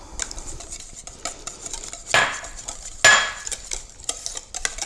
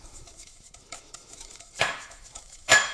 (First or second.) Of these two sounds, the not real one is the second